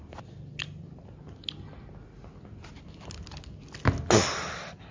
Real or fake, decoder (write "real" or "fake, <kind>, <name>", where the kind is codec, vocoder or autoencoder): real